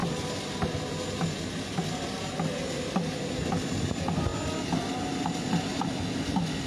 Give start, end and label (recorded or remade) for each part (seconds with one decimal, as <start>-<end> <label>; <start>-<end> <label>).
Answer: 0.0-6.7 recorded

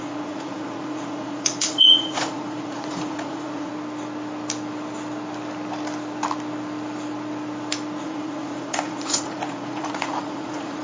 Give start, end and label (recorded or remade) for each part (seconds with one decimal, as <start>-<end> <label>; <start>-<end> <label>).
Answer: 0.0-3.7 remade; 3.7-8.0 recorded; 8.0-10.8 remade